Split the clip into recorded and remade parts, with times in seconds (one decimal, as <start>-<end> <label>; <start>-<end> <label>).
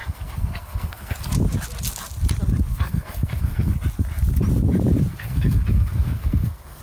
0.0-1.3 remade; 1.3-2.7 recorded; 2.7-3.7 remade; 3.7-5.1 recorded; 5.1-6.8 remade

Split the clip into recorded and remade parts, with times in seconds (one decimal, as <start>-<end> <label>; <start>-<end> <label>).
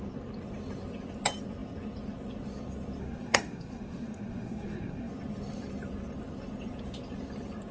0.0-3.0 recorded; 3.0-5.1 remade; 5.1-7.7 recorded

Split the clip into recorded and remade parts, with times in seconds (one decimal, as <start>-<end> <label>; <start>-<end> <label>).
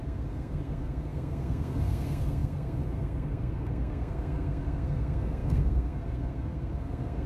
0.0-7.3 remade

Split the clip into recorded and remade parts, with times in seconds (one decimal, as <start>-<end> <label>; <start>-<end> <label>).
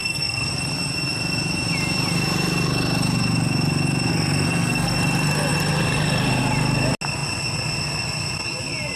0.0-0.5 remade; 0.5-4.1 recorded; 4.1-5.0 remade; 5.0-9.0 recorded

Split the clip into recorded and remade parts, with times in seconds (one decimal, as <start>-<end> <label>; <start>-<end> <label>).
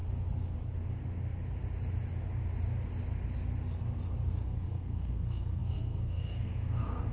0.0-4.3 recorded; 4.3-7.1 remade